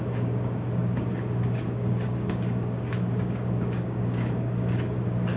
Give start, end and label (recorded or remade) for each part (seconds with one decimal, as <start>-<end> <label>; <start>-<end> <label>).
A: 0.0-5.4 remade